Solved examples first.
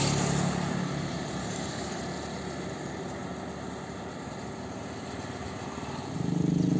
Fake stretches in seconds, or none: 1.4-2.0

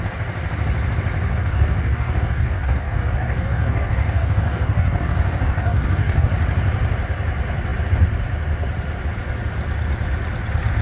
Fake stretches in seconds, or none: 1.3-6.3